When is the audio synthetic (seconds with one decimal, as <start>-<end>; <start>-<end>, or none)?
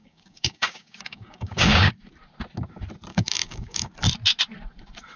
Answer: 0.0-1.9; 3.1-3.9